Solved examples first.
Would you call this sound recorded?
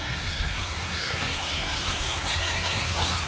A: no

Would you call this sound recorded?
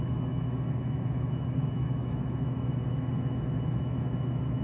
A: no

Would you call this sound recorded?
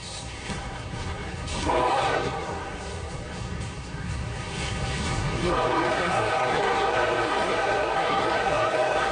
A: no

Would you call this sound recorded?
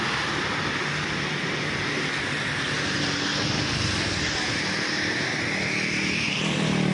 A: yes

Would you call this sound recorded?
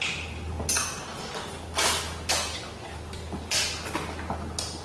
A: yes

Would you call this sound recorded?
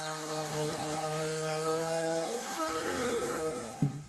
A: no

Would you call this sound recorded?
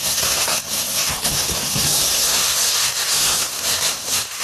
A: no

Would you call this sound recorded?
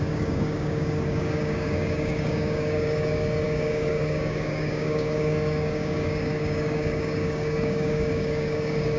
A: no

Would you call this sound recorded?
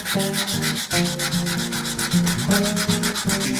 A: yes